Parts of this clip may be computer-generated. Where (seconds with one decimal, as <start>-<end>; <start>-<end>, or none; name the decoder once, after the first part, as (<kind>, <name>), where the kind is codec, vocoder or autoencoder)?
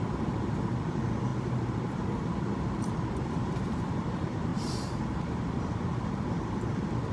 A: 0.0-7.1 (vocoder, BigVGAN v2)